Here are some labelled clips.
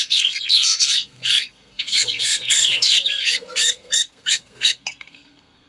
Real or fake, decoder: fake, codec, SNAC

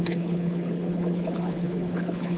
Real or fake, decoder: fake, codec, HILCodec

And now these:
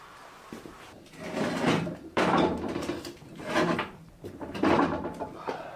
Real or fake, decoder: fake, vocoder, BigVGAN v2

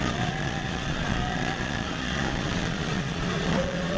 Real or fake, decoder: fake, vocoder, Vocos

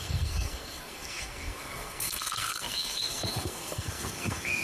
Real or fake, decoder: fake, codec, SNAC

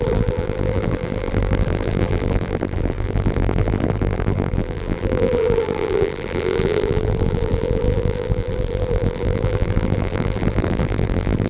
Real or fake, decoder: fake, vocoder, BigVGAN v2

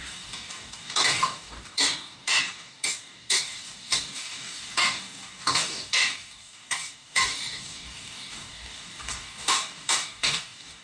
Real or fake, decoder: fake, codec, DAC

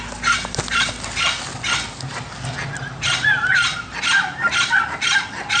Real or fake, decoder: real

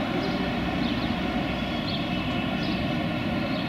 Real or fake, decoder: real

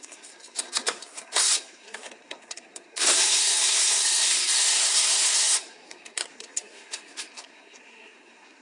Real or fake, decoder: fake, codec, SNAC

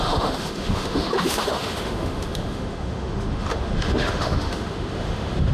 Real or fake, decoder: fake, autoencoder, DAC-VAE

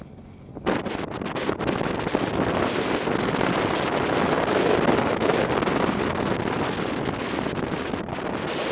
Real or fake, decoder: real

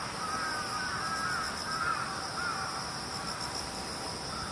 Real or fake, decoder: real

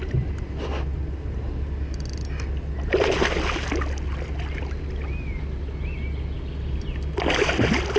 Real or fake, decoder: real